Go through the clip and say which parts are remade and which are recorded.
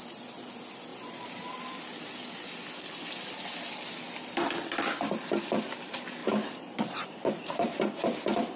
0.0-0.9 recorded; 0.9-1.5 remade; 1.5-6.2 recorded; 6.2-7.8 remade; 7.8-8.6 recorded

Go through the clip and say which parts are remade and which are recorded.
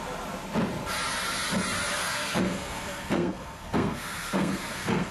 0.0-2.0 recorded; 2.0-5.1 remade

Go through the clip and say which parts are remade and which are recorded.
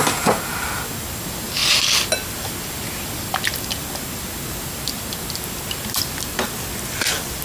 0.0-7.4 recorded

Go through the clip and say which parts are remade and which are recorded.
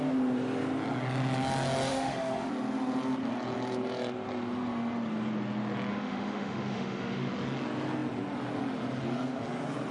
0.0-1.9 recorded; 1.9-2.5 remade; 2.5-5.9 recorded; 5.9-7.3 remade; 7.3-9.9 recorded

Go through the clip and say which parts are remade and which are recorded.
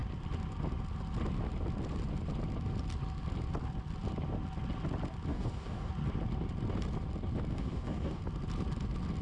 0.0-5.3 recorded; 5.3-5.9 remade; 5.9-7.5 recorded; 7.5-8.2 remade; 8.2-9.2 recorded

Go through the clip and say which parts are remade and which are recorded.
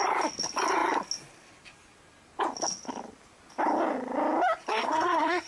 0.0-4.7 recorded; 4.7-5.5 remade